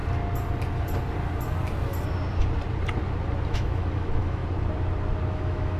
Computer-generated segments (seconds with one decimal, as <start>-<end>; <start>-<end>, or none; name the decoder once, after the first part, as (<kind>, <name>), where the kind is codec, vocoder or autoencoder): 3.5-4.4 (autoencoder, DAC-VAE); 5.3-5.8